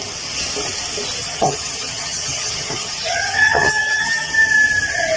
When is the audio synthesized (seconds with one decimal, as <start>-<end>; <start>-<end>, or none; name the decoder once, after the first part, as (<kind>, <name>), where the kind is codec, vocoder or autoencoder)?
1.2-4.3 (vocoder, HiFi-GAN)